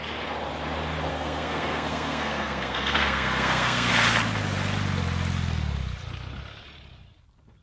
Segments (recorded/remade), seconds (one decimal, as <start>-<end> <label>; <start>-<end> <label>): 0.0-1.1 recorded; 1.1-3.9 remade; 3.9-7.6 recorded